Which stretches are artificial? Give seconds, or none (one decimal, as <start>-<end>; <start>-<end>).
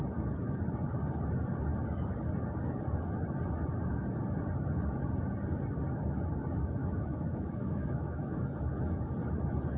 6.8-9.1